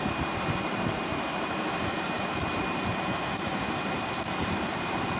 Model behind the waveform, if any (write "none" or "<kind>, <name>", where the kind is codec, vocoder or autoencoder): vocoder, BigVGAN v2